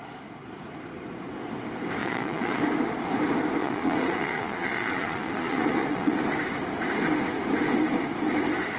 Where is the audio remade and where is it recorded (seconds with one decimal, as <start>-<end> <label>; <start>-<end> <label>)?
0.0-2.0 recorded; 2.0-2.6 remade; 2.6-3.6 recorded; 3.6-6.2 remade; 6.2-8.8 recorded